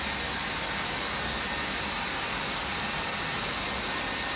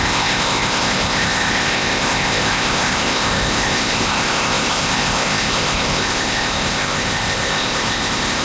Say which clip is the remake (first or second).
second